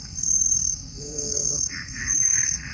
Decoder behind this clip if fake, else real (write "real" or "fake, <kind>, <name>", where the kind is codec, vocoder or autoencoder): fake, codec, SNAC